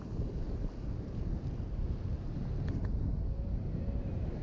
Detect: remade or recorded recorded